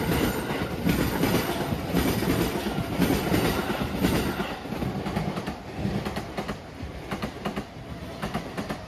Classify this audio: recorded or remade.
recorded